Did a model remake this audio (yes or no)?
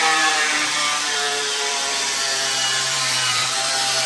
yes